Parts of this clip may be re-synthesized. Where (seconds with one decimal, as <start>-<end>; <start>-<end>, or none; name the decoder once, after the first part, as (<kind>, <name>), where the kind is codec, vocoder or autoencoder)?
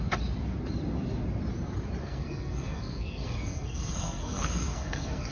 2.0-5.3 (codec, SNAC)